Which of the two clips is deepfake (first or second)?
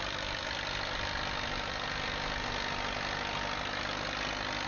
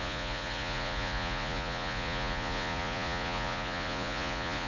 second